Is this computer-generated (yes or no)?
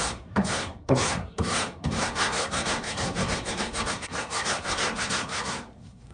yes